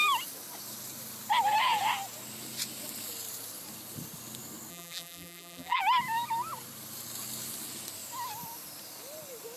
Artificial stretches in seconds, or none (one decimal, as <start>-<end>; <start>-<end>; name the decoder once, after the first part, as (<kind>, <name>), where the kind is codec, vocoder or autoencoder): 4.7-5.8 (vocoder, BigVGAN v2)